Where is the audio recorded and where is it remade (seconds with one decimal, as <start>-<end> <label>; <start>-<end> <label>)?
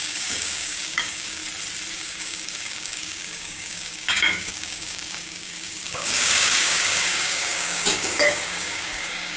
0.0-1.4 remade; 1.4-1.9 recorded; 1.9-9.4 remade